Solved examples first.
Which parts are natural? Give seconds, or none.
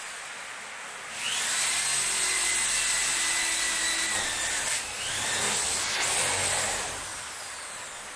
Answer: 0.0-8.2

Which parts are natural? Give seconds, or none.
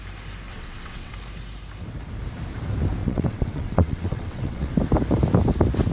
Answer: 0.0-0.5; 1.1-3.0; 4.7-5.9